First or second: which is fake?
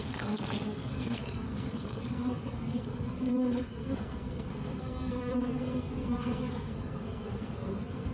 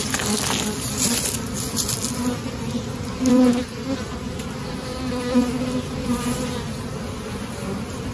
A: first